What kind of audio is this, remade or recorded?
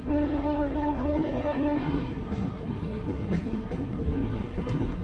remade